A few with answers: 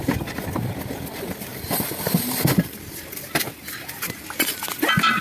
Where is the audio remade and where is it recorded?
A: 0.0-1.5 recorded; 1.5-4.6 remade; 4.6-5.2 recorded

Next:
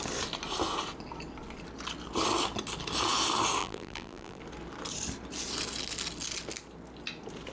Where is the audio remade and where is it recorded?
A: 0.0-3.6 recorded; 3.6-4.4 remade; 4.4-7.5 recorded

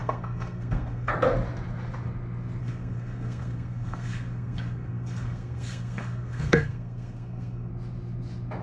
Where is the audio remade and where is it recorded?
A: 0.0-1.1 remade; 1.1-2.6 recorded; 2.6-7.7 remade; 7.7-8.6 recorded